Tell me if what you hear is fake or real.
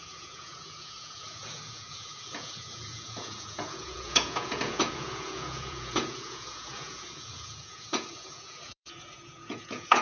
fake